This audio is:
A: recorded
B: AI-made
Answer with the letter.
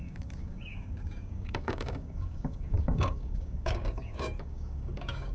B